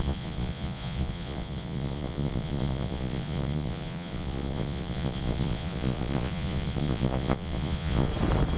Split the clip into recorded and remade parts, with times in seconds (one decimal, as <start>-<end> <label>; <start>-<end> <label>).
0.0-8.1 remade; 8.1-8.6 recorded